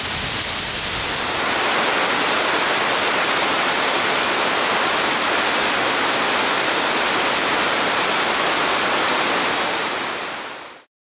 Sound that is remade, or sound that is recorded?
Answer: recorded